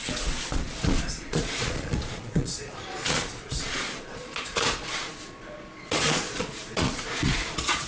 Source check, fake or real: fake